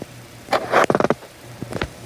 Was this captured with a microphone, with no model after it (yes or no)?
no